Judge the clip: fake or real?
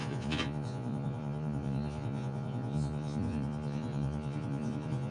fake